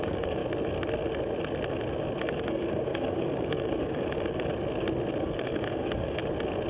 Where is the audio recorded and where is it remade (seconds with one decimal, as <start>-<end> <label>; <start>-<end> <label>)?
0.0-0.4 remade; 0.4-2.2 recorded; 2.2-4.5 remade; 4.5-5.2 recorded; 5.2-6.2 remade; 6.2-6.7 recorded